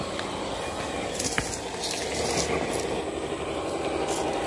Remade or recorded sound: recorded